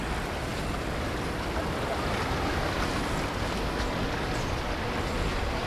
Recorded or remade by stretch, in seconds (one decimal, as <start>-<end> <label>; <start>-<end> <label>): 0.0-5.7 recorded

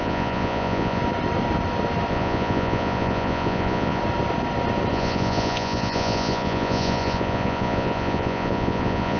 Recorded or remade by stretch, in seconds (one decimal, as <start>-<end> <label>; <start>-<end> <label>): 0.0-1.0 remade; 1.0-2.1 recorded; 2.1-4.0 remade; 4.0-4.9 recorded; 4.9-9.2 remade

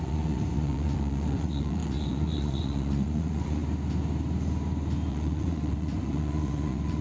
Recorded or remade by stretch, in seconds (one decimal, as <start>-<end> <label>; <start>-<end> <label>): 0.0-3.6 remade; 3.6-5.1 recorded; 5.1-7.0 remade

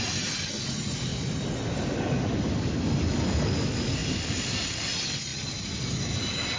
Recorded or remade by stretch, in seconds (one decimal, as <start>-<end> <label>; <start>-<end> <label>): 0.0-6.6 recorded

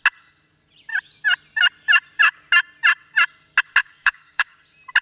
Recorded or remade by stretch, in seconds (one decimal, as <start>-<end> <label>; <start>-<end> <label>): 0.0-3.8 recorded; 3.8-4.6 remade; 4.6-5.0 recorded

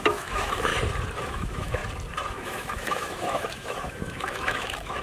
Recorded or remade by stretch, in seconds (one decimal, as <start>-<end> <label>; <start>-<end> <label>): 0.0-0.7 remade; 0.7-1.2 recorded; 1.2-1.8 remade; 1.8-2.3 recorded; 2.3-5.0 remade